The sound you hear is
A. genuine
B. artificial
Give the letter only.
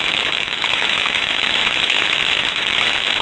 B